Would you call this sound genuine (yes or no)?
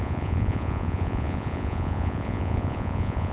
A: no